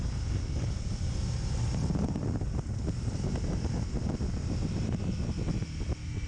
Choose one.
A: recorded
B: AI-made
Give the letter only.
A